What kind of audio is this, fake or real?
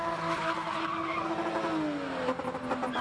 real